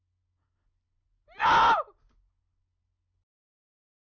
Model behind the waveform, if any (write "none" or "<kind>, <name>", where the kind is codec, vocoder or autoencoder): none